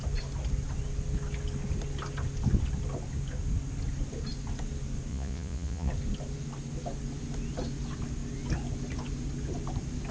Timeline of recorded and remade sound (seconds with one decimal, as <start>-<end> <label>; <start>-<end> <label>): 0.0-5.1 recorded; 5.1-5.9 remade; 5.9-10.1 recorded